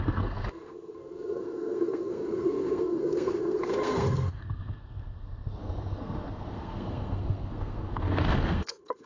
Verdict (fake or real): fake